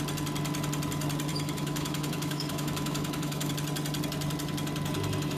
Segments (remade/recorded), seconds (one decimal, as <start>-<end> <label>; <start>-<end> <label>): 0.0-1.3 recorded; 1.3-3.5 remade; 3.5-5.4 recorded

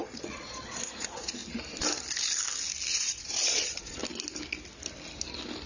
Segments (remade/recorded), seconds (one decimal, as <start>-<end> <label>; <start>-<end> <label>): 0.0-1.4 remade; 1.4-2.9 recorded; 2.9-4.0 remade; 4.0-5.7 recorded

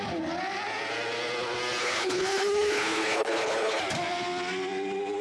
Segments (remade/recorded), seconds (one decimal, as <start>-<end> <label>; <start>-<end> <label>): 0.0-1.8 recorded; 1.8-3.8 remade; 3.8-5.2 recorded

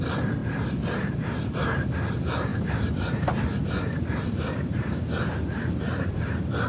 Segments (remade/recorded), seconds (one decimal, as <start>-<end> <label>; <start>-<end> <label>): 0.0-2.5 recorded; 2.5-6.1 remade; 6.1-6.7 recorded

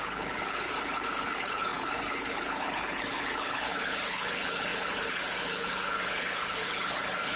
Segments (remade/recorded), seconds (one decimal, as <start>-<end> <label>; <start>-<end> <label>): 0.0-7.4 remade

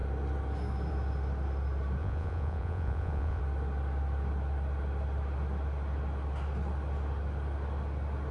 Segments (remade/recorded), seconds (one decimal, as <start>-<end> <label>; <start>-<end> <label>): 0.0-2.0 recorded; 2.0-3.4 remade; 3.4-8.3 recorded

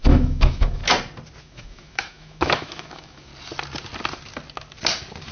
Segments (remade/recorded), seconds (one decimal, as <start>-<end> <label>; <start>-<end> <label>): 0.0-0.8 remade; 0.8-1.4 recorded; 1.4-3.3 remade; 3.3-5.3 recorded